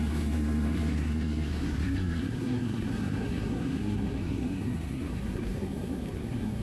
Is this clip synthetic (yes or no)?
yes